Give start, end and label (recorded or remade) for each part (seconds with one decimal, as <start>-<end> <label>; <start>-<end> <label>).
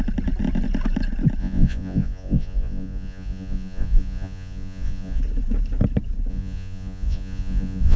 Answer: 0.0-1.4 recorded; 1.4-5.2 remade; 5.2-6.3 recorded; 6.3-8.0 remade